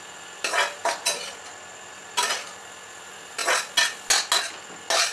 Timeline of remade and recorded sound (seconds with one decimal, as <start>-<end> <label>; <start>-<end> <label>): 0.0-5.1 recorded